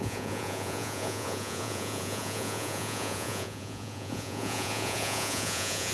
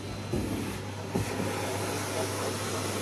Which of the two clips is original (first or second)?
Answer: second